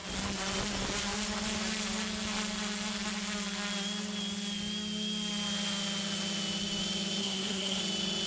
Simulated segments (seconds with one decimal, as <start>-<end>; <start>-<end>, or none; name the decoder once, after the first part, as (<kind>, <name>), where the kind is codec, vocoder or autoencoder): 7.2-7.8 (codec, SNAC)